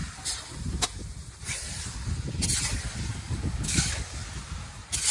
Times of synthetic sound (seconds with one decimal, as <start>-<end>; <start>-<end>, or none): 3.1-4.2